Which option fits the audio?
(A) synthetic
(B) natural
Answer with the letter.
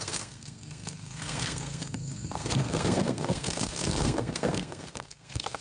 A